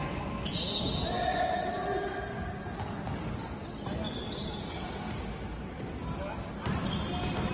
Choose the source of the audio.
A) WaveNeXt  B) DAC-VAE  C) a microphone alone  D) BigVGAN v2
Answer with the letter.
C